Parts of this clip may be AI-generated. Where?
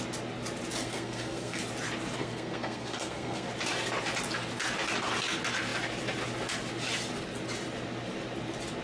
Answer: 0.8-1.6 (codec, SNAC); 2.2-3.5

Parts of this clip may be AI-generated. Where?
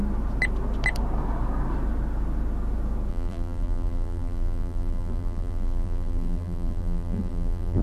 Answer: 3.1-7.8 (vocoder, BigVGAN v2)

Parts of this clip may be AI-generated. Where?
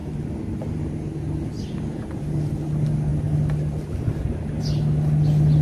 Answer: 0.0-0.8 (vocoder, BigVGAN v2)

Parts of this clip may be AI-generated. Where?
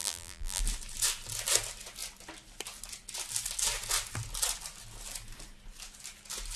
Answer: 0.0-0.6 (vocoder, BigVGAN v2)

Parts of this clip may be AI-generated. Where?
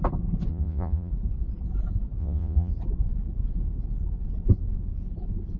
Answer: 0.5-1.1 (vocoder, Vocos); 2.2-2.7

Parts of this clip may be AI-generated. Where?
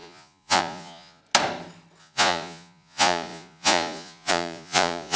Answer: 0.0-1.2 (vocoder, Vocos); 2.0-5.2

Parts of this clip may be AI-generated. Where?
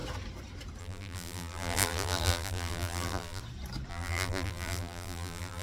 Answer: 0.8-3.4 (vocoder, BigVGAN v2); 3.9-5.6